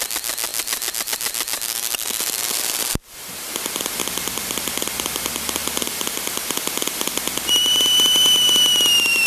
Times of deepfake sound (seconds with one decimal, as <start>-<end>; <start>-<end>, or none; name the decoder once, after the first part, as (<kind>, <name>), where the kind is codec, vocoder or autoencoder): 0.5-3.3 (vocoder, BigVGAN v2); 5.6-7.4